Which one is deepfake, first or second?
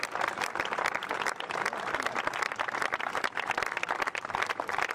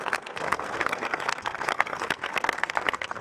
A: second